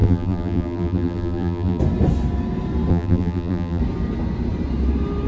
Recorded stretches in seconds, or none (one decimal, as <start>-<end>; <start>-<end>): 1.8-2.9; 3.8-5.3